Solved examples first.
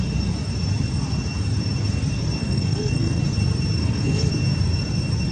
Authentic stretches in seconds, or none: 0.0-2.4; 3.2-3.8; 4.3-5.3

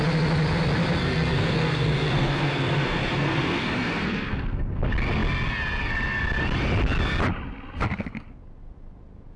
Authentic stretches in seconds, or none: 0.0-1.0; 4.8-9.4

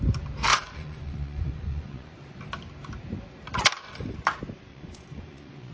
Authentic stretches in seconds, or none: 0.0-0.5; 2.4-4.7

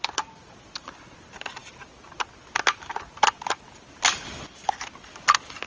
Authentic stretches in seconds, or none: 0.0-5.7